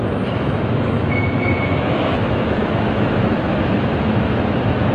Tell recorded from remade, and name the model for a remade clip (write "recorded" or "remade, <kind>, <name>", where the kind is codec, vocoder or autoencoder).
remade, autoencoder, DAC-VAE